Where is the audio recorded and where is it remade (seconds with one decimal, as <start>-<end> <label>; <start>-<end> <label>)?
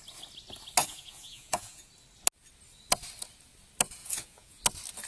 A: 0.0-0.8 recorded; 0.8-1.9 remade; 1.9-4.0 recorded; 4.0-4.6 remade; 4.6-5.1 recorded